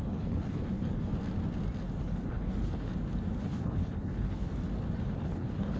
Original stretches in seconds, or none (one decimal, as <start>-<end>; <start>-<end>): 1.1-2.0; 2.9-3.4; 4.5-5.1